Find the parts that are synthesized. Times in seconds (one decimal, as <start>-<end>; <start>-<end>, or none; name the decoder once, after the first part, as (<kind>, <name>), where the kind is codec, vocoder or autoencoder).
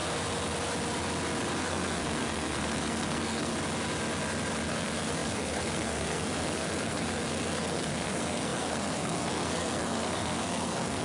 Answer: 1.6-3.5 (codec, SNAC); 4.7-11.0